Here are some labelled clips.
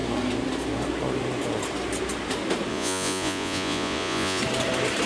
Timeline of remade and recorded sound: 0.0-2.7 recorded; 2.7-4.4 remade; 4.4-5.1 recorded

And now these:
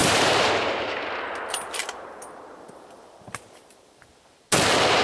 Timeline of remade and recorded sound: 0.0-1.1 remade; 1.1-1.8 recorded; 1.8-4.1 remade; 4.1-5.0 recorded

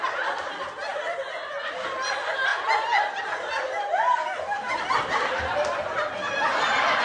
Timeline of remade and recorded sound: 0.0-7.0 recorded

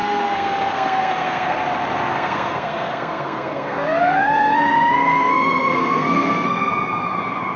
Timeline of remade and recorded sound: 0.0-1.6 remade; 1.6-2.1 recorded; 2.1-6.7 remade; 6.7-7.6 recorded